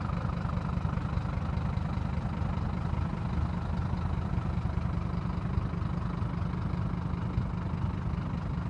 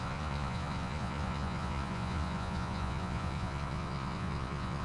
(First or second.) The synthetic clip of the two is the second